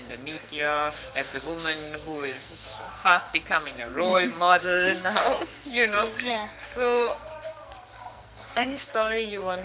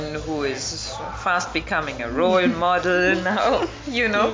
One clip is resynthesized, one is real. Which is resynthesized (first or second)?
first